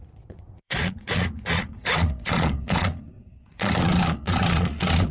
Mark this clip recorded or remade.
remade